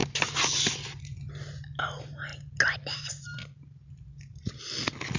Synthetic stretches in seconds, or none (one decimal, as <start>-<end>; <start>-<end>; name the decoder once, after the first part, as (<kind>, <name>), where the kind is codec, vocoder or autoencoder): none